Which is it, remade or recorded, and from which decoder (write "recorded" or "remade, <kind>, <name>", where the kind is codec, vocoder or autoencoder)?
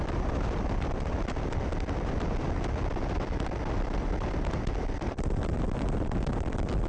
remade, vocoder, BigVGAN v2